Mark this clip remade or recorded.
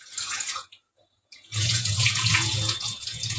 remade